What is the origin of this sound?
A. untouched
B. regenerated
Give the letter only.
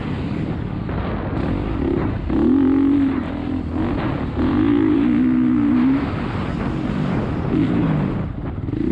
A